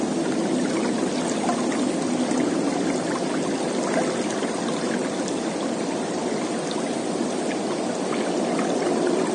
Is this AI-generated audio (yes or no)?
no